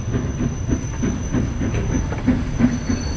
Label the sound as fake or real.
real